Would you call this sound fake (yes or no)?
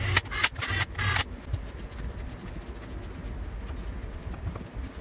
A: no